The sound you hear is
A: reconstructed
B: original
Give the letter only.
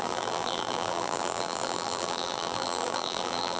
A